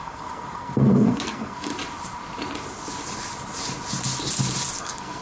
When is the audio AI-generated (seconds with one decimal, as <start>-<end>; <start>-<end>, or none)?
0.0-1.7; 4.8-5.2